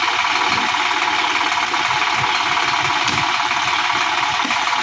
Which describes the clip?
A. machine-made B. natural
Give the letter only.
B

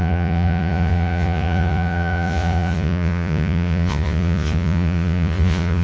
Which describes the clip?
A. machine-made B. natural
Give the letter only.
A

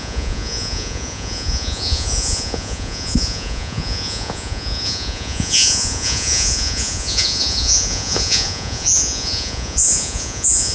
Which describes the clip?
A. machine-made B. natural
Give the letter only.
A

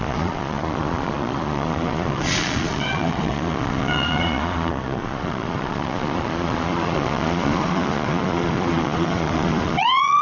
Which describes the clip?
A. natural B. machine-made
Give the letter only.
B